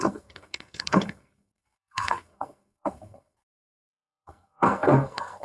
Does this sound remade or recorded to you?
remade